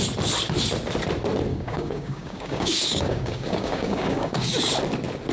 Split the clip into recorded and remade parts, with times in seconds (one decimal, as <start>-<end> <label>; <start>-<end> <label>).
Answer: 0.0-1.5 recorded; 1.5-4.7 remade; 4.7-5.3 recorded

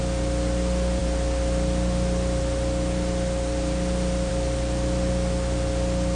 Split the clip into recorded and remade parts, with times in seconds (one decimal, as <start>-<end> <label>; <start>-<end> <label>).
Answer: 0.0-6.1 recorded

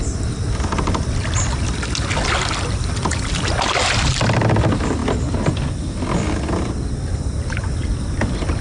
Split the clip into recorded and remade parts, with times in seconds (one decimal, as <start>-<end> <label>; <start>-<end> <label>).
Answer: 0.0-8.6 recorded

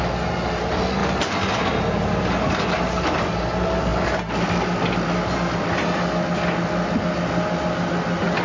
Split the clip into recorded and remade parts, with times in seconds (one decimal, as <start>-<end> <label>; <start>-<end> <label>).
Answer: 0.0-8.4 recorded

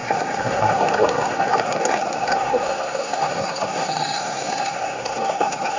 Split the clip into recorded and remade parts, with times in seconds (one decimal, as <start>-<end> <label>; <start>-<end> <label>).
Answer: 0.0-5.8 remade

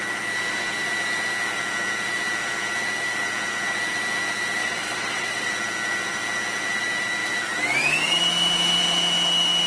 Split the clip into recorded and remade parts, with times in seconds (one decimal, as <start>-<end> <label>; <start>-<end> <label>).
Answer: 0.0-4.6 recorded; 4.6-5.5 remade; 5.5-9.7 recorded